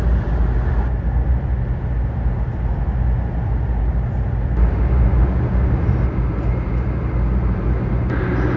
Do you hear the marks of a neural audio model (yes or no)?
no